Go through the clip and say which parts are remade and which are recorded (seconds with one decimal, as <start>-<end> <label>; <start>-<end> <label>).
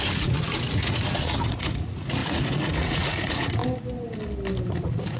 0.0-3.6 remade; 3.6-4.7 recorded; 4.7-5.2 remade